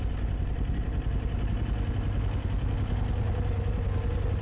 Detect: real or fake real